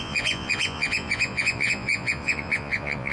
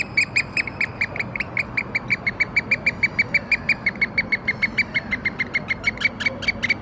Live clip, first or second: second